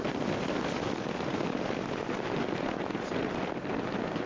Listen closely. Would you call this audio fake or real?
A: real